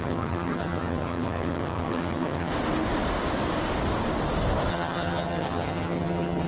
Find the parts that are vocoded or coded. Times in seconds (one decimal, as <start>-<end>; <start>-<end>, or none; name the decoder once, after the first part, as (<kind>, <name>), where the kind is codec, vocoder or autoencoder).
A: 0.0-2.5 (vocoder, HiFi-GAN); 4.7-6.5